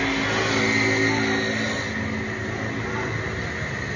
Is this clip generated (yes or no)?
no